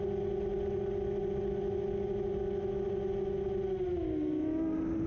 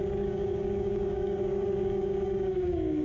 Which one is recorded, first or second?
first